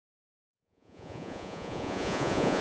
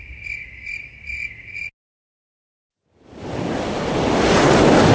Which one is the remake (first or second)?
first